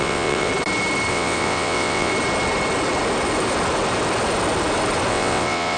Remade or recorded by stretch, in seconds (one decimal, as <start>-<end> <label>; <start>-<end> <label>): 0.0-0.5 remade; 0.5-1.1 recorded; 1.1-2.1 remade; 2.1-5.1 recorded; 5.1-5.8 remade